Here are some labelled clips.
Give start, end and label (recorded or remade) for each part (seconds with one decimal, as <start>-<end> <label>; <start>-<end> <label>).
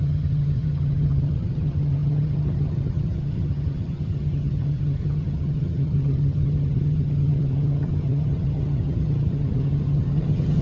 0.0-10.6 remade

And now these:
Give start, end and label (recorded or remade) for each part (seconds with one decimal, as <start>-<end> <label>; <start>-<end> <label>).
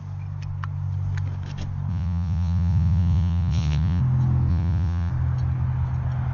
0.0-1.9 recorded; 1.9-4.0 remade; 4.0-4.5 recorded; 4.5-5.1 remade; 5.1-6.3 recorded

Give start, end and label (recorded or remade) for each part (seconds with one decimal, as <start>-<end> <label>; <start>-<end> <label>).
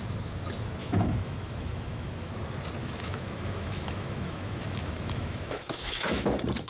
0.0-0.8 recorded; 0.8-2.3 remade; 2.3-2.8 recorded; 2.8-6.3 remade; 6.3-6.7 recorded